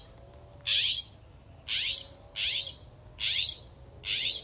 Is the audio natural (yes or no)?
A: yes